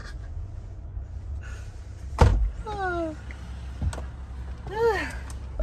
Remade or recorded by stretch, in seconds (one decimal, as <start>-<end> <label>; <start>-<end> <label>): 0.0-1.4 remade; 1.4-5.6 recorded